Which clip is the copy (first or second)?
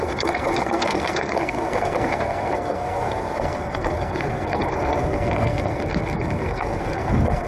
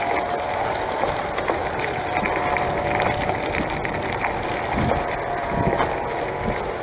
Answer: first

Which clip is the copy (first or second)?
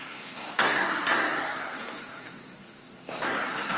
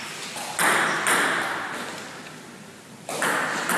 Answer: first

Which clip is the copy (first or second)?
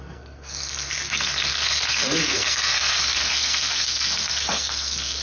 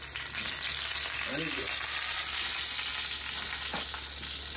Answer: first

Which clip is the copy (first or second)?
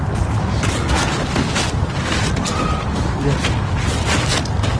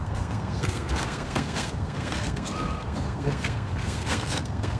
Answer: second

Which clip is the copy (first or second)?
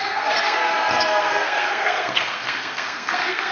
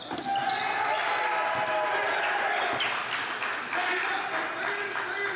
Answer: first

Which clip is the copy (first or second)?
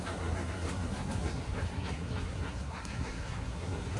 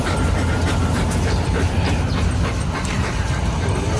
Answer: first